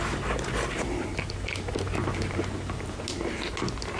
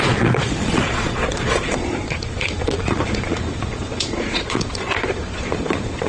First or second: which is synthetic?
second